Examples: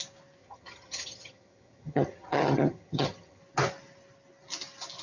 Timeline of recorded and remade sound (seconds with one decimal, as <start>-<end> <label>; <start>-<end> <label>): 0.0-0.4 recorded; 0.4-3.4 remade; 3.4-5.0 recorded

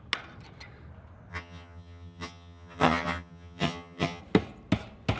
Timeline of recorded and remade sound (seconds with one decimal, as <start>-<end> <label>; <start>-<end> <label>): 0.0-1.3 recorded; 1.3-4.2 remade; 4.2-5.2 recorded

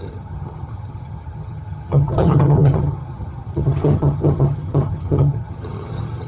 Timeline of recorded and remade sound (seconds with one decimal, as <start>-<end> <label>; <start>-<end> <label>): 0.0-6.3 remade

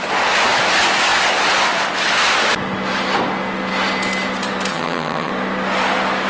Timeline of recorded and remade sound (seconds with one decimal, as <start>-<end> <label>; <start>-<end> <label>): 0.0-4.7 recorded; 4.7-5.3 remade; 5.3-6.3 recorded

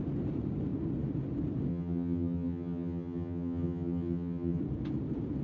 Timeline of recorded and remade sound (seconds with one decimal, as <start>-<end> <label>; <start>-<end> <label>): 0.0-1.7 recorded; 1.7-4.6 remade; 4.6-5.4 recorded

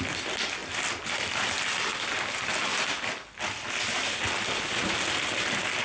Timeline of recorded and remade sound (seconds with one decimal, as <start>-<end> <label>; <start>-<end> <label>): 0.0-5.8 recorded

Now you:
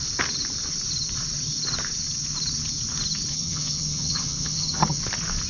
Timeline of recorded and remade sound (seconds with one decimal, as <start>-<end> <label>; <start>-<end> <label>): 0.0-3.3 recorded; 3.3-5.0 remade; 5.0-5.5 recorded